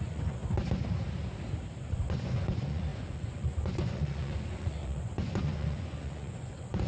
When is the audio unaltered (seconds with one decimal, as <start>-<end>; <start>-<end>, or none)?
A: 0.4-1.8